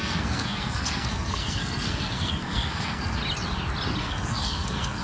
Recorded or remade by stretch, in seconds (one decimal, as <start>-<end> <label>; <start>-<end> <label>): 0.0-3.2 remade; 3.2-4.0 recorded; 4.0-5.0 remade